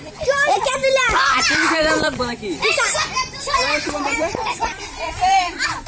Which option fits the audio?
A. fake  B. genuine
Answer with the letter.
A